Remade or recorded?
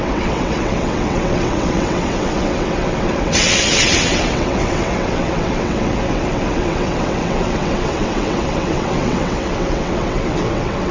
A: remade